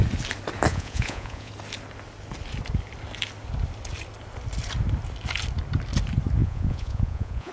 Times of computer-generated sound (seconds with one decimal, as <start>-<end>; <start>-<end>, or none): 0.7-1.5; 6.4-7.5